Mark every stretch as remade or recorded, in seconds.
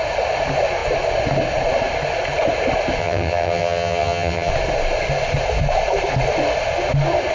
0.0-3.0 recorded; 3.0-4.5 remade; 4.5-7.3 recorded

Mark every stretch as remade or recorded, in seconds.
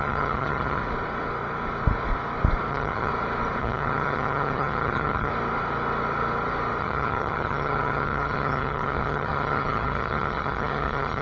0.0-0.8 remade; 0.8-2.7 recorded; 2.7-3.1 remade; 3.1-3.6 recorded; 3.6-5.3 remade; 5.3-6.8 recorded; 6.8-11.2 remade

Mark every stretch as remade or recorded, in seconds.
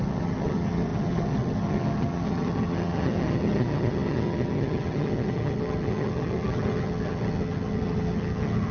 0.0-8.7 remade